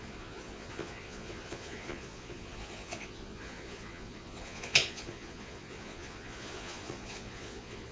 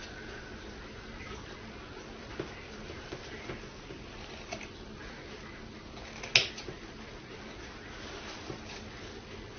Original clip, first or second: second